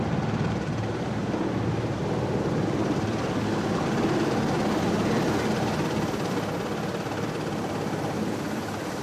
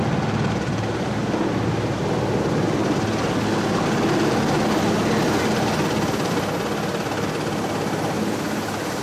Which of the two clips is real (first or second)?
second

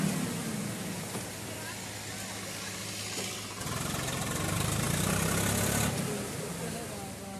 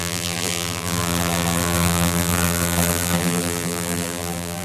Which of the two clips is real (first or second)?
first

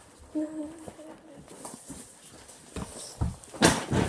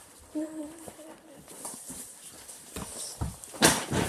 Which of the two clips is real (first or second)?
first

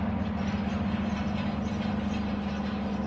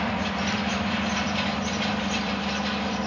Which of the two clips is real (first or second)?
first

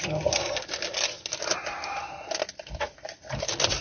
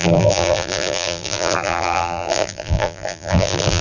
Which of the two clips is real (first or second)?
first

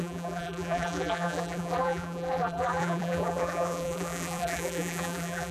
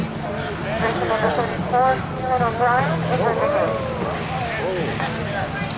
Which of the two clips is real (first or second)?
second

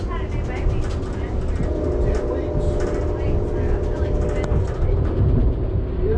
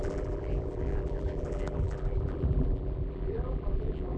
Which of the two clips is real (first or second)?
first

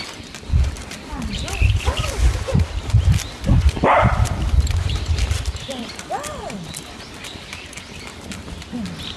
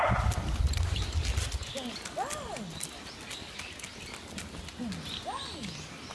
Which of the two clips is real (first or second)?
second